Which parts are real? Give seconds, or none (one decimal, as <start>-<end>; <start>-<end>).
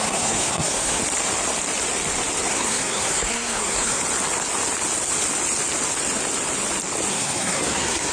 1.0-2.5; 4.0-7.1